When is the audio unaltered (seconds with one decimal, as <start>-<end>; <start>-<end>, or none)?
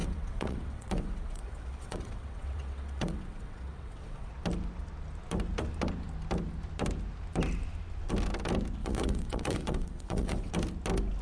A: 4.3-8.8; 10.5-11.2